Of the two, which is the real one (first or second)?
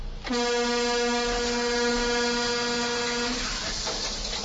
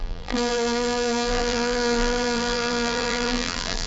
first